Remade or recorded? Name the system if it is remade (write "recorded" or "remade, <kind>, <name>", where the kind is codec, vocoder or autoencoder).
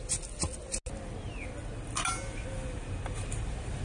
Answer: recorded